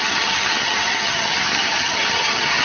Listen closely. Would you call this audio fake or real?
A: fake